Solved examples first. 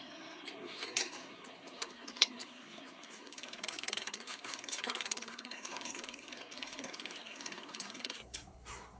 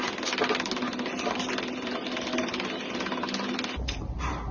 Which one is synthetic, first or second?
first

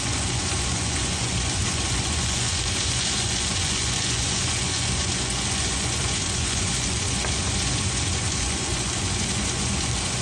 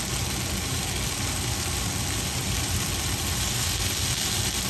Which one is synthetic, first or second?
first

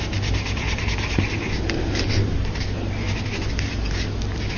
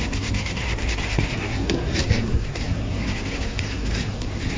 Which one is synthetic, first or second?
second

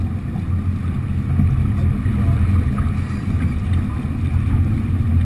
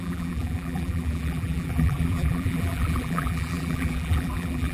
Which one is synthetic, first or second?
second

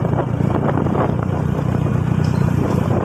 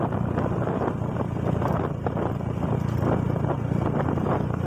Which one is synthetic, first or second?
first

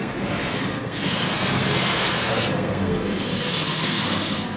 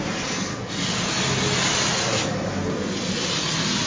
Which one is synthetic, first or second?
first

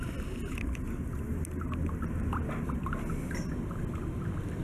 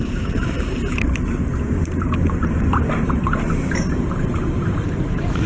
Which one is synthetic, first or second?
second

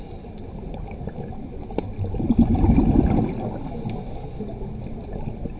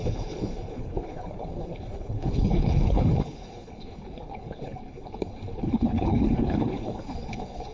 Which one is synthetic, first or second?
second